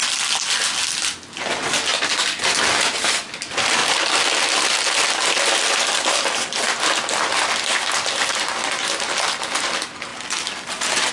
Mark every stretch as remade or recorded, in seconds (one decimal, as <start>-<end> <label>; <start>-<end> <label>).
0.0-11.1 recorded